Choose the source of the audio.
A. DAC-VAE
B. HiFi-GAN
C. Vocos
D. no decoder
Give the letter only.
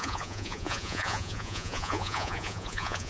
C